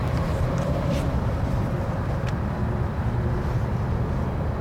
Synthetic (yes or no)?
no